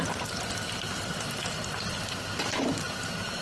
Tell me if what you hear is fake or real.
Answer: real